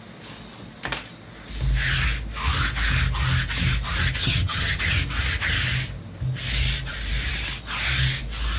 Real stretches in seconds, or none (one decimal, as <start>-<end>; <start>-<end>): 0.0-4.2; 4.8-8.6